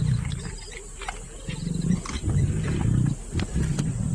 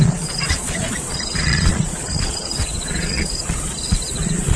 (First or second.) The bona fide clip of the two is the first